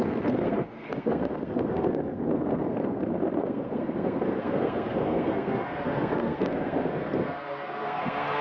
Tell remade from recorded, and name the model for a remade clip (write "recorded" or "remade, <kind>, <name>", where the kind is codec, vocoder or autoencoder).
remade, codec, SNAC